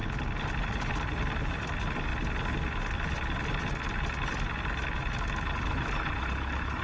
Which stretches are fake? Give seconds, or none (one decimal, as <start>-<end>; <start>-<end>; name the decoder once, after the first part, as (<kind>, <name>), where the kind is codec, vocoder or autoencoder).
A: none